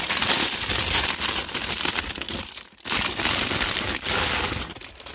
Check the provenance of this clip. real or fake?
real